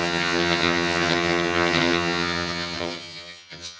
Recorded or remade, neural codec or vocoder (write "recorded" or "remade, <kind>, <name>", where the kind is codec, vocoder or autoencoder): remade, vocoder, HiFi-GAN